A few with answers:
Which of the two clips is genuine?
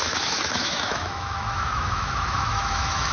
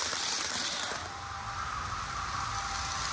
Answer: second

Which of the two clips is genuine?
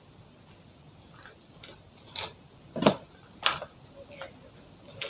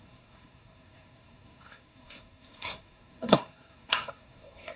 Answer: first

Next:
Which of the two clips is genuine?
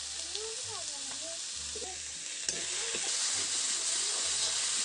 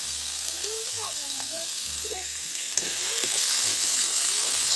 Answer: first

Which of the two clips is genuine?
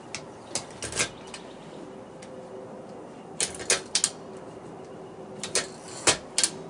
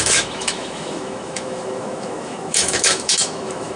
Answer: first